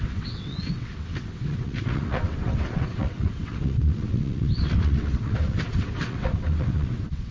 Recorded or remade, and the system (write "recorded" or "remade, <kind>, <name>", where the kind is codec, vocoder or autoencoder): remade, vocoder, WaveNeXt